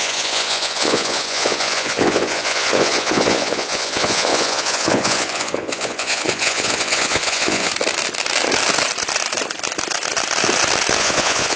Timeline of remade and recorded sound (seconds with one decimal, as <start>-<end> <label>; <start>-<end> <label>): 0.0-7.7 remade; 7.7-11.0 recorded; 11.0-11.6 remade